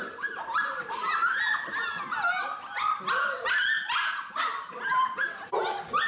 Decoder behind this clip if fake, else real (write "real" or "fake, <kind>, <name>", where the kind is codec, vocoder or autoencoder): real